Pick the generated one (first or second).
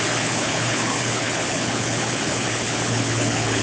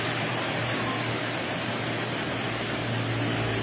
first